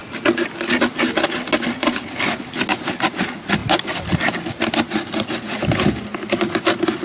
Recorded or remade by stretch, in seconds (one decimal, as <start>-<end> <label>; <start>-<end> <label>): 0.0-7.0 recorded